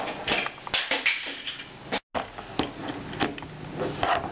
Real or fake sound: real